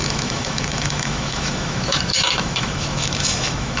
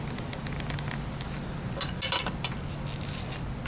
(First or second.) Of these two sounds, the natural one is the second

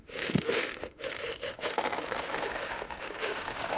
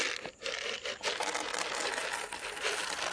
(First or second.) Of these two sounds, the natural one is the second